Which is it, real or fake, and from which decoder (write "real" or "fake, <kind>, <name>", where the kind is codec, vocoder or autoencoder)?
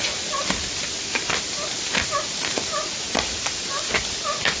real